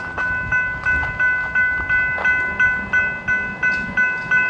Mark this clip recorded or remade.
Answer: recorded